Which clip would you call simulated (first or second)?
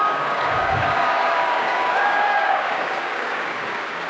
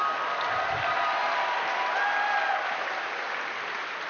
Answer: first